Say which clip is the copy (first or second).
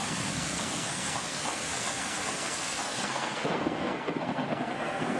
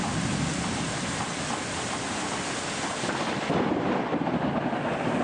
first